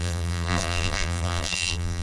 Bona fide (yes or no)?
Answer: no